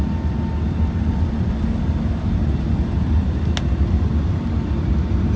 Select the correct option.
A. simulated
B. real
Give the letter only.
B